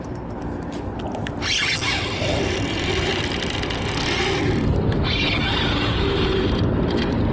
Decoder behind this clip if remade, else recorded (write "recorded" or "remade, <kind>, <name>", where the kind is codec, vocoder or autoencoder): recorded